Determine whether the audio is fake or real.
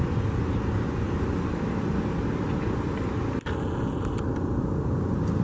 real